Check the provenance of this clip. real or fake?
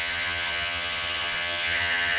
fake